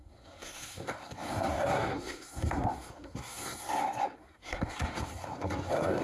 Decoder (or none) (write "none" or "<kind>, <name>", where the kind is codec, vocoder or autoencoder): codec, SNAC